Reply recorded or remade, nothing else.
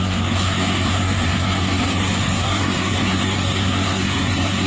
remade